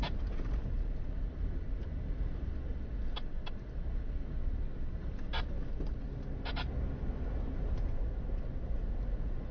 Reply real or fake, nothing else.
real